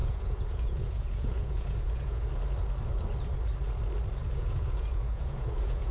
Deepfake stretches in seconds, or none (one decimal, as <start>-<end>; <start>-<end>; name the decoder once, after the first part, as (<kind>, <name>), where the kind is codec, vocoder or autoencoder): 0.0-2.3 (vocoder, Vocos); 4.2-5.9